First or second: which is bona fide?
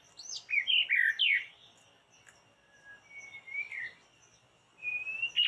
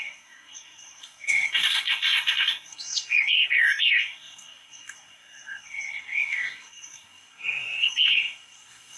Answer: first